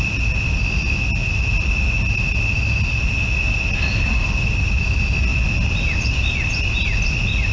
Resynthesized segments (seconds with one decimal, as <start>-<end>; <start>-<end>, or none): none